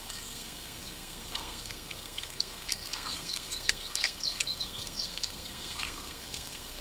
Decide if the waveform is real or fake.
fake